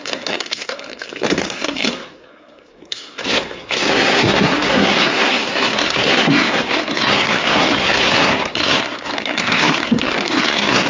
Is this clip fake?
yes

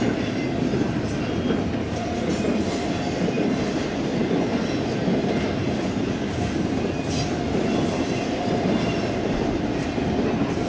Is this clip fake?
no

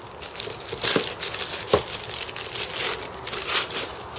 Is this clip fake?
no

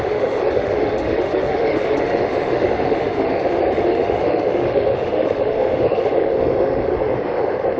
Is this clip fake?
yes